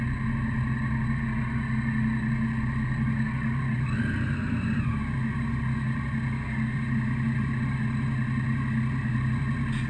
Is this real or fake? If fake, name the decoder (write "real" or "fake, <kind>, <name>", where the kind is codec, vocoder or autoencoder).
real